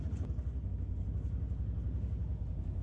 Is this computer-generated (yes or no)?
no